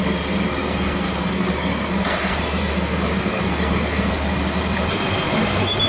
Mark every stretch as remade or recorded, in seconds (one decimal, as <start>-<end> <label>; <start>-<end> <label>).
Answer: 0.0-0.6 recorded; 0.6-4.1 remade; 4.1-5.9 recorded

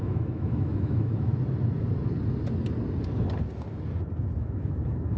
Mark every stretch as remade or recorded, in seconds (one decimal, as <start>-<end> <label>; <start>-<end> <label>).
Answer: 0.0-1.3 remade; 1.3-4.4 recorded; 4.4-5.2 remade